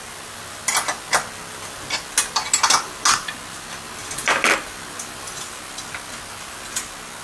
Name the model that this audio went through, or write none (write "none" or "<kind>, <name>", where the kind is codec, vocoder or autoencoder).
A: none